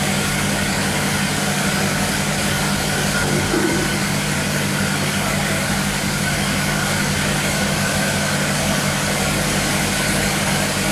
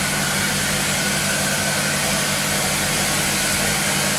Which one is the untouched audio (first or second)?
second